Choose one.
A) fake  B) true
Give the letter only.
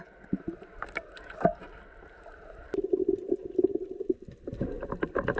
B